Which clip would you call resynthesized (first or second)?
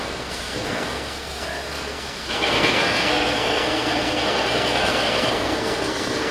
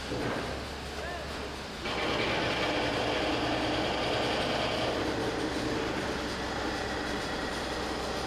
first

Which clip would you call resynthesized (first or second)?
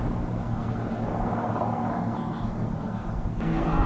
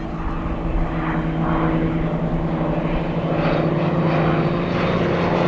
first